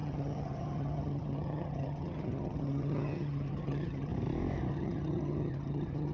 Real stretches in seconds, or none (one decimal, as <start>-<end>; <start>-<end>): 4.1-4.7